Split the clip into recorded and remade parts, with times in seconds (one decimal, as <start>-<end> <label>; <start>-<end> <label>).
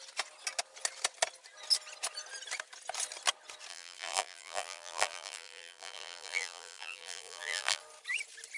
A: 0.0-3.7 recorded; 3.7-7.8 remade; 7.8-8.6 recorded